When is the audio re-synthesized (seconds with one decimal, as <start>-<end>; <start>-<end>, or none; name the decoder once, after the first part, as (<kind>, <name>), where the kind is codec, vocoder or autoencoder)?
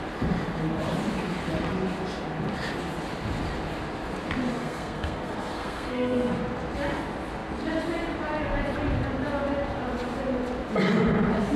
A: 4.6-6.3 (codec, SNAC)